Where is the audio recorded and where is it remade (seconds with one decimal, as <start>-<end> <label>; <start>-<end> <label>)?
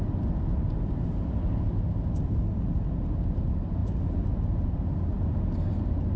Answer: 0.0-6.2 recorded